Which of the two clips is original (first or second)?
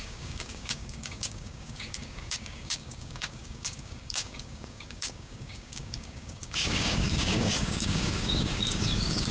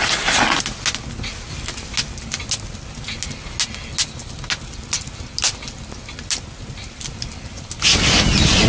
second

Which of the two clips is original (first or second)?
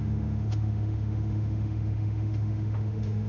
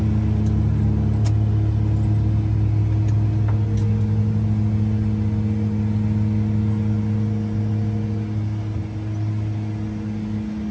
second